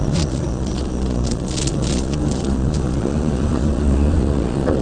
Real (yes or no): no